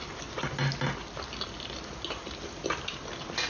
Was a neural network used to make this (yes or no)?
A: no